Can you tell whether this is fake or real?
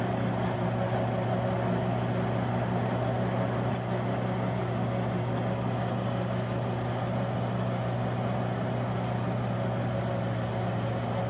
real